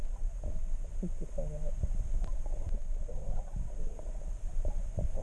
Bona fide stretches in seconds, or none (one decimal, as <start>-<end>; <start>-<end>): 0.0-5.2